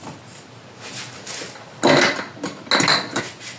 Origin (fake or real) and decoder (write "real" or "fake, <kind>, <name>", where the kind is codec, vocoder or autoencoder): real